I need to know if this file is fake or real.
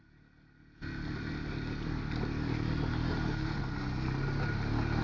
real